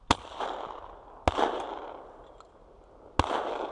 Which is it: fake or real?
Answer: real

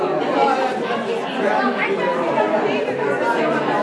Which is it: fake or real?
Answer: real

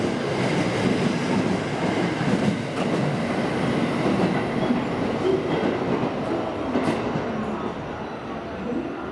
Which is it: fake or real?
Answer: real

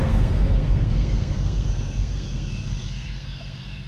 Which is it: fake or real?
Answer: fake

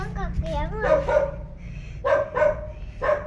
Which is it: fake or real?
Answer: real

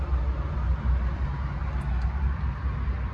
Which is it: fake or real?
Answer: real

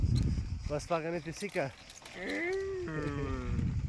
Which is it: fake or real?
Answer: real